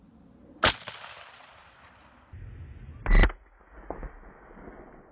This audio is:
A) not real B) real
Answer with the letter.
B